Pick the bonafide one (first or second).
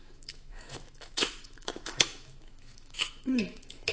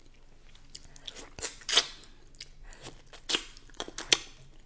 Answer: second